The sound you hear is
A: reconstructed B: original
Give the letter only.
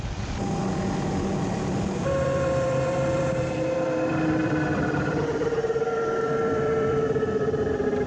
A